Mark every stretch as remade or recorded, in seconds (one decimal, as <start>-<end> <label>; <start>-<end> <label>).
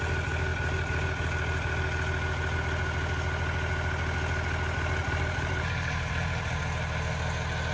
0.0-5.0 recorded; 5.0-6.6 remade; 6.6-7.7 recorded